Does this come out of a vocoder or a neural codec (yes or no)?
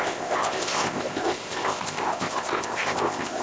yes